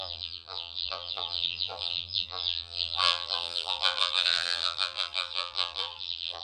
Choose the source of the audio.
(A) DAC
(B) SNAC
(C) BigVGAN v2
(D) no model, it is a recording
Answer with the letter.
C